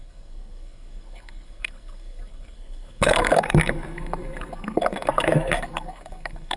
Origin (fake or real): fake